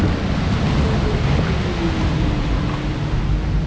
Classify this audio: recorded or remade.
recorded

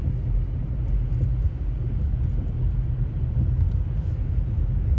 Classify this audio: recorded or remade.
recorded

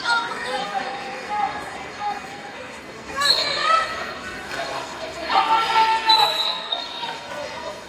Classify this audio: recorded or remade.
remade